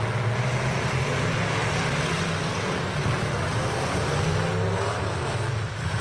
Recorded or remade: recorded